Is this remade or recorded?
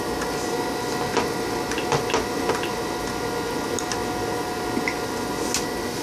recorded